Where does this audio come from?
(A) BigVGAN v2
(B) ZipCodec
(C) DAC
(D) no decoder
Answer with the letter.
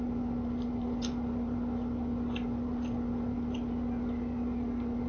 D